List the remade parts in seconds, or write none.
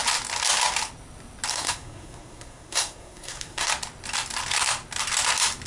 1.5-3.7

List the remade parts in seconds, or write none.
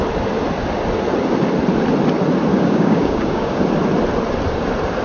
2.5-3.6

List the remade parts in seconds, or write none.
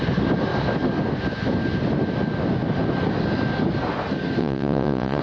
4.4-5.2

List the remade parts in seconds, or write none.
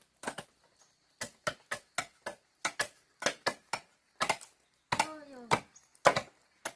none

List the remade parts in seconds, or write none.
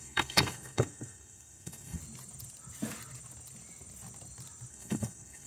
0.0-2.0; 4.7-5.5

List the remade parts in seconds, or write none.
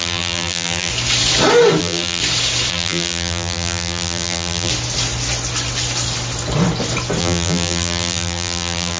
0.0-0.9; 1.8-2.2; 2.7-4.7; 7.2-9.0